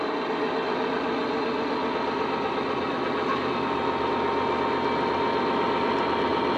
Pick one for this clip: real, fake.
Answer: real